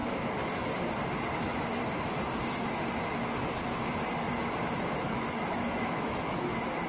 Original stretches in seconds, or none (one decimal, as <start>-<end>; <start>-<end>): 0.0-1.4; 1.8-4.8